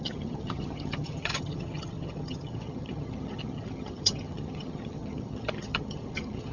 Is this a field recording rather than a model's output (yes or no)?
no